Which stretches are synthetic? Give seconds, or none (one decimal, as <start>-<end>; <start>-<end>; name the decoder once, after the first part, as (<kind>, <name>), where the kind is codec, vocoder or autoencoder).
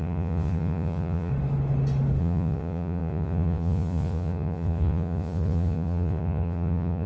0.0-1.3 (vocoder, Vocos); 2.2-7.1